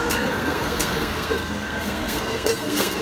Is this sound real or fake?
fake